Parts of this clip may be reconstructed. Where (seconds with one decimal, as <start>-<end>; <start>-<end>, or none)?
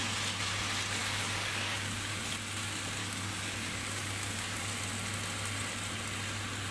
1.0-2.2; 3.0-4.6